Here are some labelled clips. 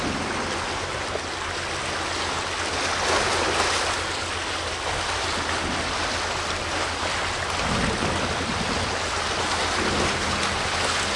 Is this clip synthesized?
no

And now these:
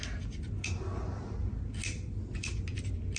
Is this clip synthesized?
no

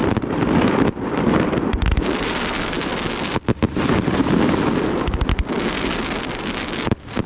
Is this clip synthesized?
no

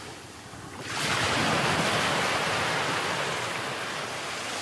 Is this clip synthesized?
no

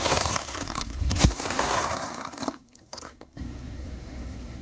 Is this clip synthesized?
yes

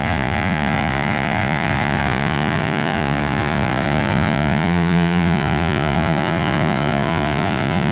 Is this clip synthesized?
yes